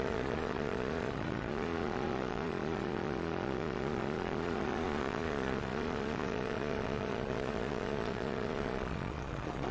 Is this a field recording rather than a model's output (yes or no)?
no